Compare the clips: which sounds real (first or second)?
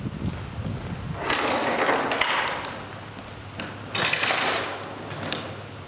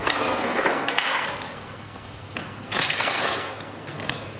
first